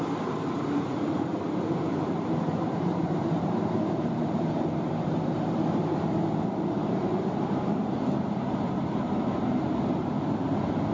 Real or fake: fake